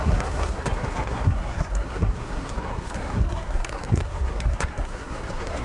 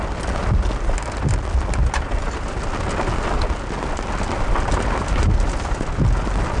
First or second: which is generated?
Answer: first